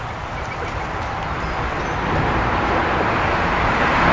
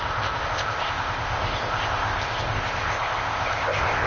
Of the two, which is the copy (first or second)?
second